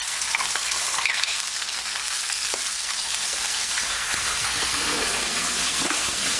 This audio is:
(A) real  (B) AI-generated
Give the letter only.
B